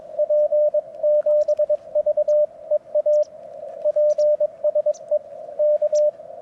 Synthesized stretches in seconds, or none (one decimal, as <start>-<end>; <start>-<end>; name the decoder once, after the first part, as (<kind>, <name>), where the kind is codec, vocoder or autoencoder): none